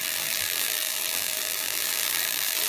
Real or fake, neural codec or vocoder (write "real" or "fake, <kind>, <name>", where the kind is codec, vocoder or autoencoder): fake, vocoder, BigVGAN v2